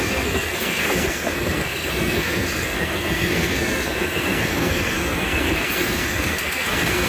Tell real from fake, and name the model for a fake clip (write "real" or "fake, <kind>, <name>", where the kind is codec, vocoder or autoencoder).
fake, codec, SNAC